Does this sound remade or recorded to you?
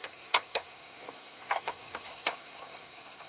remade